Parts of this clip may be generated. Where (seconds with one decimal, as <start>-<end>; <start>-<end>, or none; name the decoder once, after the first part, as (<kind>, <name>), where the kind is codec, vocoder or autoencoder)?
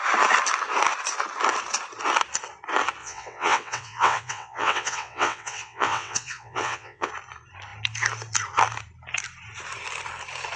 3.0-7.1 (vocoder, WaveNeXt)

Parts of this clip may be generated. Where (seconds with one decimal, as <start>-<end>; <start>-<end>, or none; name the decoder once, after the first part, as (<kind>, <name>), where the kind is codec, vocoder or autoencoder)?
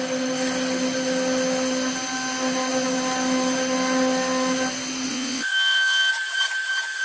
5.1-6.1 (vocoder, WaveNeXt)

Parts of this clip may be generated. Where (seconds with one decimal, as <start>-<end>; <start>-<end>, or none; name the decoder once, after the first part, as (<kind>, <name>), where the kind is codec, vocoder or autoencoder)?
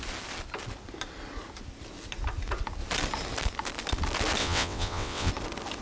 4.4-5.3 (vocoder, WaveNeXt)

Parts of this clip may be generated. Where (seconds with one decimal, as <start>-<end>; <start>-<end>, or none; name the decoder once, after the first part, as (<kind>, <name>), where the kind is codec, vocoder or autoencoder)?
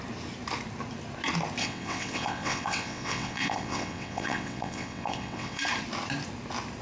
1.6-5.6 (vocoder, WaveNeXt)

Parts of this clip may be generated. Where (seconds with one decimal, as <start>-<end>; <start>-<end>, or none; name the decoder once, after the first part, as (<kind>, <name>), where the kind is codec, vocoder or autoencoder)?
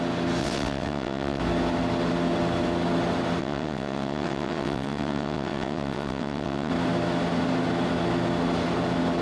0.4-1.4 (vocoder, WaveNeXt); 3.4-6.7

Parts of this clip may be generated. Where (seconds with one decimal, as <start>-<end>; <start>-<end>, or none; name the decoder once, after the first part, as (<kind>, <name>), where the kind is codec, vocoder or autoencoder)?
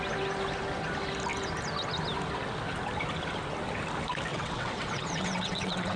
4.3-6.0 (vocoder, WaveNeXt)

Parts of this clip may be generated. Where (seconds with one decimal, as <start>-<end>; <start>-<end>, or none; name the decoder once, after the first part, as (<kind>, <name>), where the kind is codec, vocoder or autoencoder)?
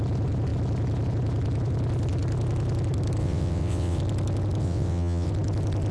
3.2-4.0 (vocoder, WaveNeXt); 4.6-5.3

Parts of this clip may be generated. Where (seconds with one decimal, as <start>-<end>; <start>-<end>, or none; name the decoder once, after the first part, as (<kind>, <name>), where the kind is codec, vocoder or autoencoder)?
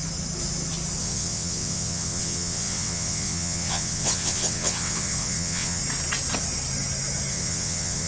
1.0-5.8 (vocoder, WaveNeXt); 7.3-8.1